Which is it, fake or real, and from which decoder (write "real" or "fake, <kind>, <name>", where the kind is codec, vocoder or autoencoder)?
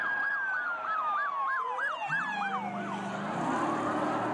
real